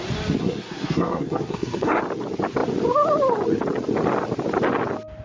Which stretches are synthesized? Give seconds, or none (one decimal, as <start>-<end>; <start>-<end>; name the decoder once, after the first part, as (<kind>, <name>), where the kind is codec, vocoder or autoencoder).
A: 0.4-2.0 (codec, SNAC)

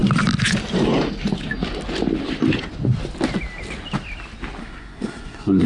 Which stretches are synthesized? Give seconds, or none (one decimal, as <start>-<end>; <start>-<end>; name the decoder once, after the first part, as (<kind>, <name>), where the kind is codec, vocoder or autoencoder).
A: 4.6-5.7 (codec, SNAC)

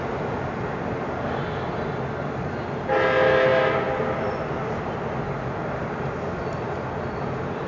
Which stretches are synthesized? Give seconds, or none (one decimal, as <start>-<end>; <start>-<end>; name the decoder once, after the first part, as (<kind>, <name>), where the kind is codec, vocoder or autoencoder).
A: none

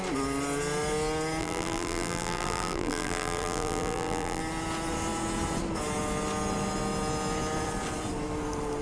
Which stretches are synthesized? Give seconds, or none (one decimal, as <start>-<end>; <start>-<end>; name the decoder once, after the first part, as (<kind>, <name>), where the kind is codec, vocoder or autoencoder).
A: 1.4-4.4 (vocoder, BigVGAN v2)